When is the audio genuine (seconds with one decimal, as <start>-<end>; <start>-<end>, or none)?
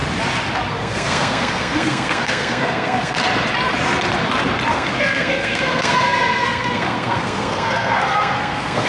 0.0-0.7; 3.2-4.7